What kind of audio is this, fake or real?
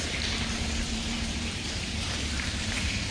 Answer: fake